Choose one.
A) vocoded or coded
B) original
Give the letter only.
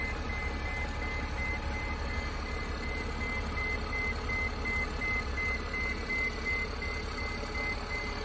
B